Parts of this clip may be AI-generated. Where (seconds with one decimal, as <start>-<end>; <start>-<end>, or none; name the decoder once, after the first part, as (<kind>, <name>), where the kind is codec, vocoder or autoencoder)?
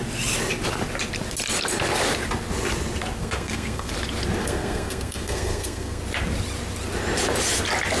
3.2-3.9 (codec, SNAC); 4.4-6.0